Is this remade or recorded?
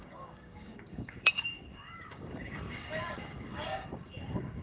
remade